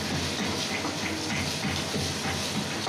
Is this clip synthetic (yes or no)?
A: no